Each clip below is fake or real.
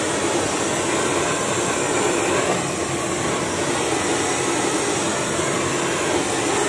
real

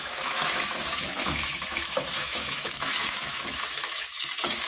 fake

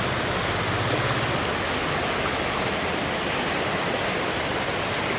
real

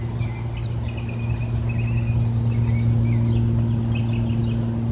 real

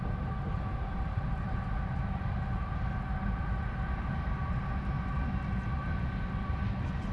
real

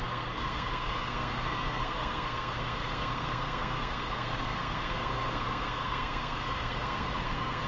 fake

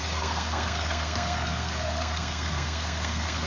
fake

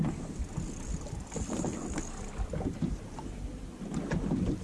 real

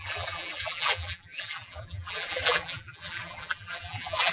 fake